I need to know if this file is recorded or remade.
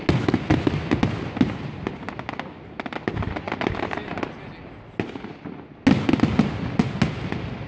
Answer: recorded